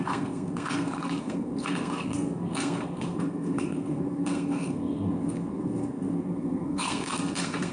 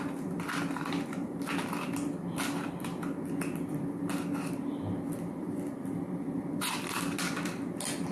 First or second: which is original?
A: second